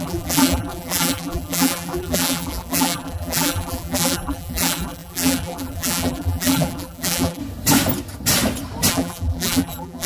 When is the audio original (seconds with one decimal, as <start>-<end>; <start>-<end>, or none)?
7.4-8.9